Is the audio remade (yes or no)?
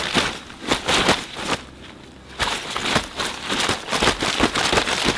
no